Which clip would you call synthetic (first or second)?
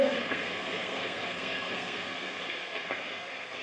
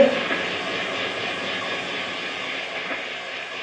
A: first